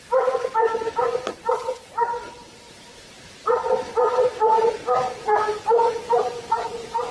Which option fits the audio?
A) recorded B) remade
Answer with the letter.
B